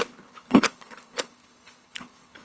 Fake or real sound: fake